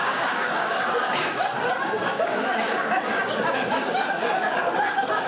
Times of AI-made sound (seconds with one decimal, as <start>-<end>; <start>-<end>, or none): 0.0-1.6; 2.0-5.3